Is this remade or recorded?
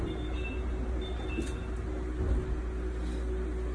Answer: recorded